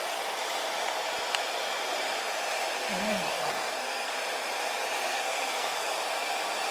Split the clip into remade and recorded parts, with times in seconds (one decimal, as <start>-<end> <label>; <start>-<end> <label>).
0.0-3.1 recorded; 3.1-4.1 remade; 4.1-5.1 recorded; 5.1-6.0 remade; 6.0-6.7 recorded